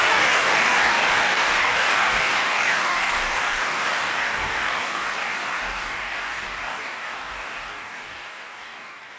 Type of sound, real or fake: fake